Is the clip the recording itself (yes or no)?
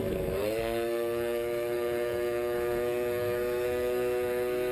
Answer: no